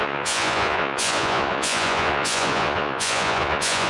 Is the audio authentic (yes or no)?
no